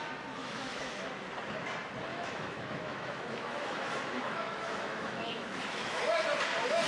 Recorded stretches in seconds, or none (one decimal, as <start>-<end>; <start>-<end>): 0.0-0.4; 1.0-2.1; 6.0-6.9